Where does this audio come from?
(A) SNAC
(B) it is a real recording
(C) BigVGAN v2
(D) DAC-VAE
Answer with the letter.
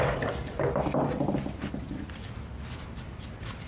B